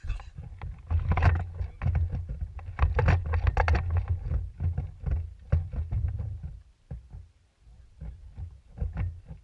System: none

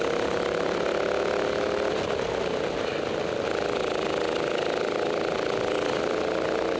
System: none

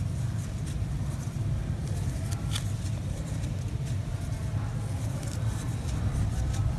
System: none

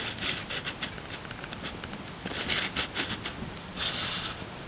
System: none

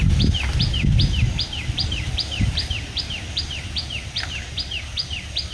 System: none